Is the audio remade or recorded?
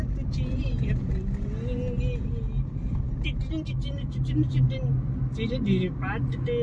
recorded